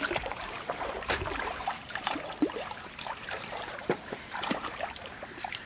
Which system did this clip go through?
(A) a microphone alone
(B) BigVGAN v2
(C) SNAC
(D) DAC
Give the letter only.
B